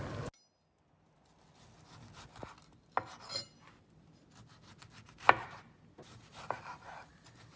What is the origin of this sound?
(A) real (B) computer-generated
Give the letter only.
A